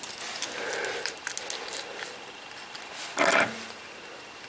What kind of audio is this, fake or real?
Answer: real